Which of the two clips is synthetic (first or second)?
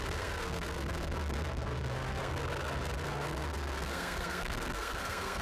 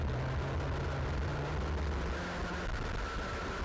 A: first